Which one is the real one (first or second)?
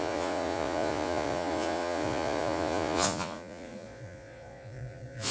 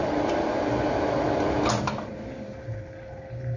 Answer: second